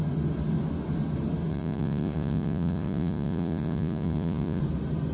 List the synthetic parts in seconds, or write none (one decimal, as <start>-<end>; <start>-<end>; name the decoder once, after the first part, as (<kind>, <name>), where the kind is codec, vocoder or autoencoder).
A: 1.5-4.6 (vocoder, Vocos)